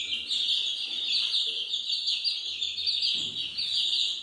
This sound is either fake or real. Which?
real